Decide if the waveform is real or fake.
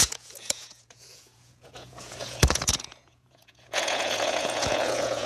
fake